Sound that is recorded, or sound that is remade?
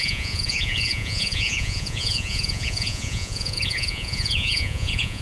remade